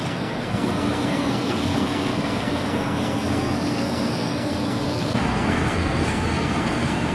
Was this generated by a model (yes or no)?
yes